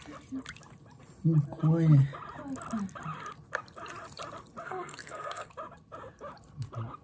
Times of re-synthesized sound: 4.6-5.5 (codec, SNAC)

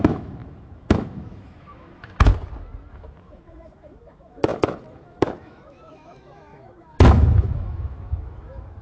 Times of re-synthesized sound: 0.0-2.3 (autoencoder, DAC-VAE); 2.9-8.8

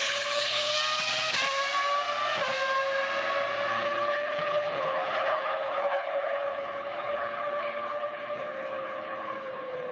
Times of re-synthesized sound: 0.0-0.7 (codec, HILCodec); 3.7-9.9

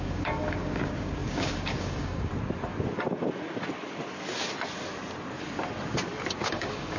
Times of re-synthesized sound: 0.0-2.3 (codec, DAC); 6.4-7.0

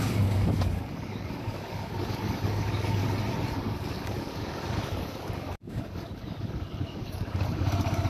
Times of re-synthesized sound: 0.0-3.0 (codec, DAC); 3.5-8.1

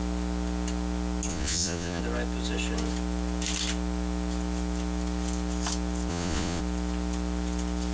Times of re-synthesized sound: 1.3-2.0 (vocoder, Vocos); 6.1-6.6